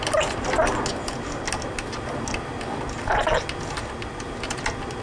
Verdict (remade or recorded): recorded